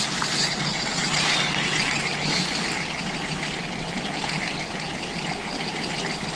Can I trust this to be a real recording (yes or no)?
yes